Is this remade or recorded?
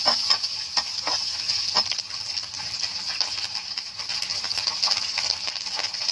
recorded